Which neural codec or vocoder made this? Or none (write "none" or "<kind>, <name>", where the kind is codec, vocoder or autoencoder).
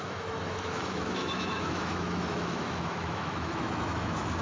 autoencoder, DAC-VAE